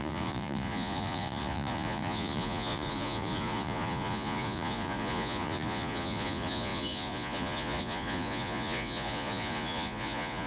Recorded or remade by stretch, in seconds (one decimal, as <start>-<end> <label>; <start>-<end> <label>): 0.0-10.5 remade